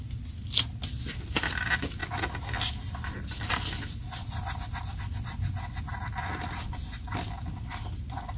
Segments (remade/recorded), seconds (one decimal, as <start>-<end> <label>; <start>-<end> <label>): 0.0-8.4 recorded